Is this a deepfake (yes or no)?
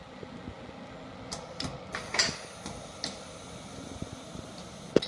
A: no